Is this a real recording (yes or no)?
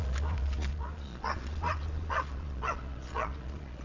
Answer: no